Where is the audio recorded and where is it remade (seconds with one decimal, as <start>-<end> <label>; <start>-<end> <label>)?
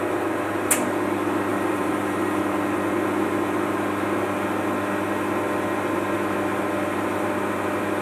0.0-1.5 recorded; 1.5-2.4 remade; 2.4-8.0 recorded